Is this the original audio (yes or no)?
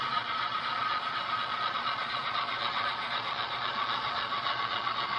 no